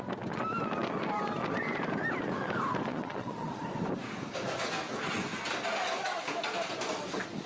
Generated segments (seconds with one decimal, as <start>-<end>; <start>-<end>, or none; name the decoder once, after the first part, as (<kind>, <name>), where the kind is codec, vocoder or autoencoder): 2.9-3.6 (vocoder, Vocos)